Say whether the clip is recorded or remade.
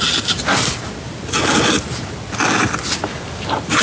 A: recorded